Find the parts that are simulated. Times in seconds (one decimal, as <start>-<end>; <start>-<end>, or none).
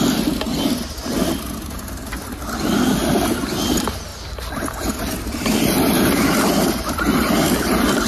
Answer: none